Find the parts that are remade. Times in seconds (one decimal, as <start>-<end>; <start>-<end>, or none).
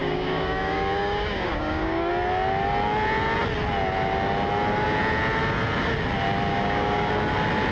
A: 0.0-2.1; 6.5-7.1